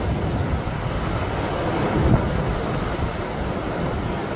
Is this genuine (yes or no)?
yes